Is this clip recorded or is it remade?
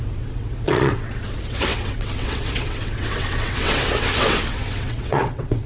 remade